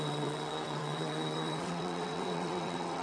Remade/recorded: remade